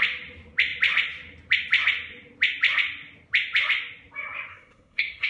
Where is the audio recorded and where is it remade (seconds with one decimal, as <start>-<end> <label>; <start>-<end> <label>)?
0.0-4.5 recorded; 4.5-5.3 remade